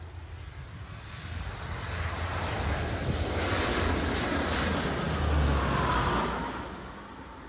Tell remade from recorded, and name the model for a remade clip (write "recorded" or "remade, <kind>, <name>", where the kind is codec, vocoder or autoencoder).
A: recorded